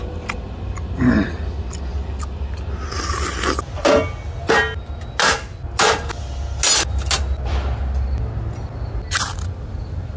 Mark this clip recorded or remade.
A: recorded